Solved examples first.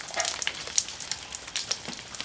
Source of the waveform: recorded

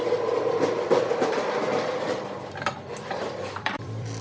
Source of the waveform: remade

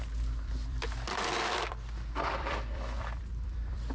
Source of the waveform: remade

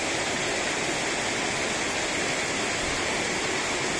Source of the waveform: recorded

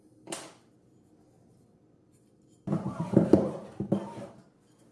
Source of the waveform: recorded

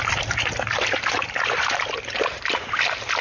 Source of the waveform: recorded